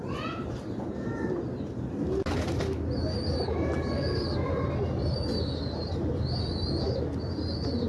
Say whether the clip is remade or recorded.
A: recorded